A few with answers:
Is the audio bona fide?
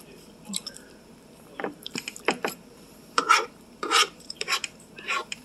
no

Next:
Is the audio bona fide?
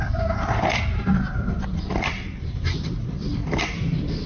no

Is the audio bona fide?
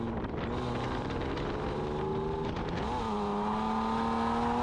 yes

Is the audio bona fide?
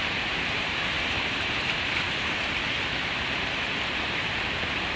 no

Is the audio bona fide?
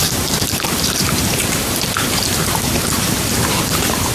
no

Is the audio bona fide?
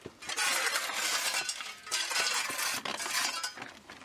yes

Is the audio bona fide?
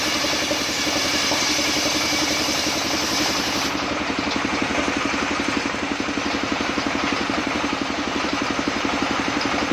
no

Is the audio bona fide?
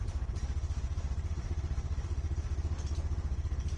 no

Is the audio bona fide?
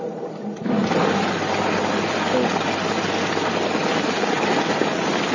yes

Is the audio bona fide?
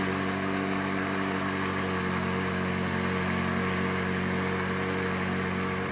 yes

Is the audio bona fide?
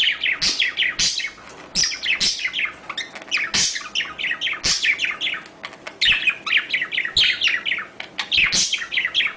yes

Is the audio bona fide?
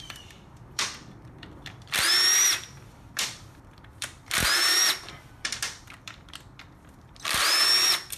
no